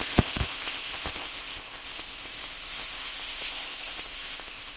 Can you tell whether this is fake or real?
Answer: fake